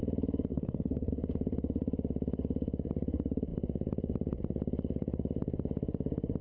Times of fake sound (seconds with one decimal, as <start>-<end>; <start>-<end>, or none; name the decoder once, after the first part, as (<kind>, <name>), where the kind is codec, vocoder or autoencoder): 0.5-1.1 (codec, SNAC)